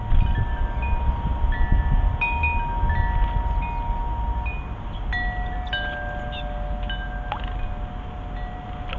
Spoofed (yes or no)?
no